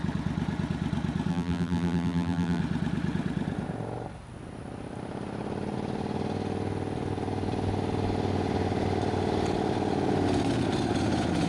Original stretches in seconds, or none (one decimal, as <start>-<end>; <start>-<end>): 0.0-1.3; 2.6-11.5